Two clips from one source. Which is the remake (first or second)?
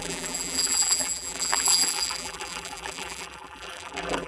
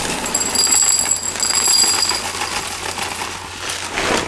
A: first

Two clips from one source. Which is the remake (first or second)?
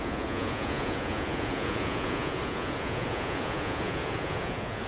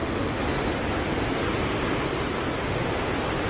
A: first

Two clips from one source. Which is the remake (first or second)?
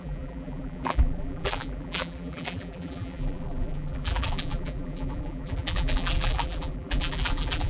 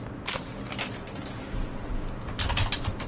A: first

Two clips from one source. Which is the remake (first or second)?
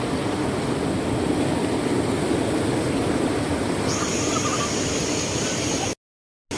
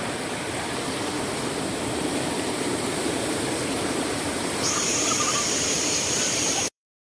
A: second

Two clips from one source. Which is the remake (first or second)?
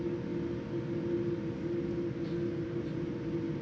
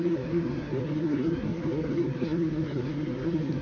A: second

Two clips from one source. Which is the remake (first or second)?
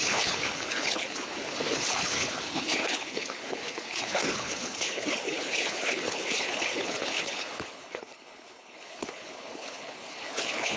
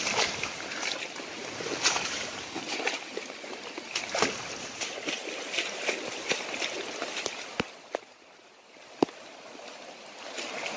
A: first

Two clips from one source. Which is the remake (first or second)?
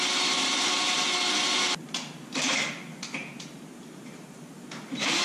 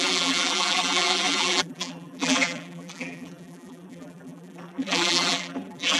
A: second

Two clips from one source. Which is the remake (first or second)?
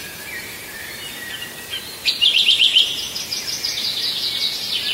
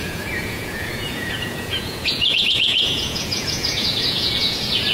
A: second